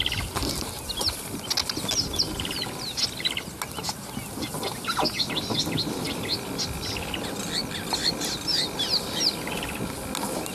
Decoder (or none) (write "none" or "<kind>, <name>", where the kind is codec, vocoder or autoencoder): none